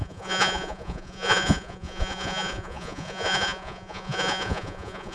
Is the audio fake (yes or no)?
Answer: yes